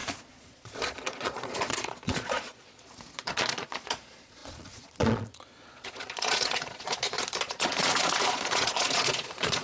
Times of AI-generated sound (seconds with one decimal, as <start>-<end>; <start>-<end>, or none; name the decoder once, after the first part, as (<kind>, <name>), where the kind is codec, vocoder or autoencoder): 0.0-9.6 (vocoder, Vocos)